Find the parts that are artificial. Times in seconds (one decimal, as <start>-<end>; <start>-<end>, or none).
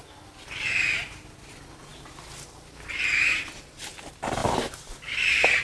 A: none